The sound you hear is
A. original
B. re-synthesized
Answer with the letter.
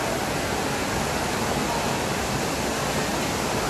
A